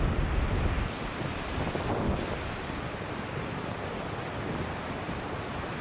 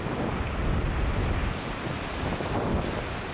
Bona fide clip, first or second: second